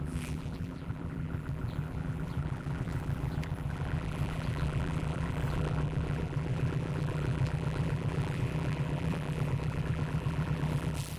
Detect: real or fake fake